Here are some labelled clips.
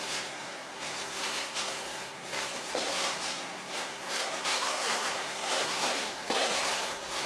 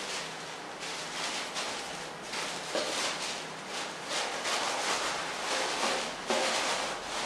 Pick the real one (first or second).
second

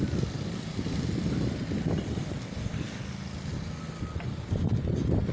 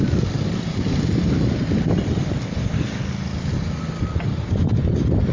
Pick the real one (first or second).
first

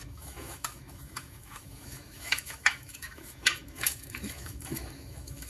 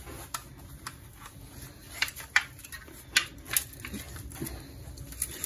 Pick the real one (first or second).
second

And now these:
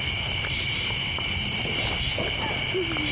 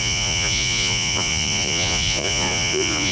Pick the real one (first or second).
first